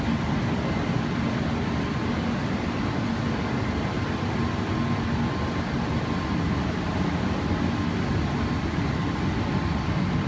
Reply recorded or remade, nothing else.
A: recorded